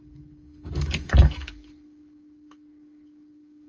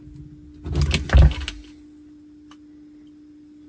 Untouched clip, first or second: second